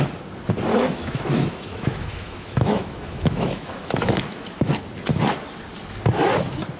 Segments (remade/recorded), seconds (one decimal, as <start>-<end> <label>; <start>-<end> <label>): 0.0-0.7 recorded; 0.7-4.8 remade; 4.8-6.8 recorded